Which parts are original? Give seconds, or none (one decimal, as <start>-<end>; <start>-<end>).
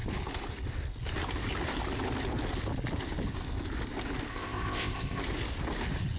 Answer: 0.0-4.3; 5.2-6.2